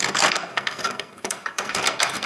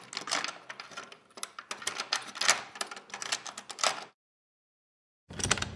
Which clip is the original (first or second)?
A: second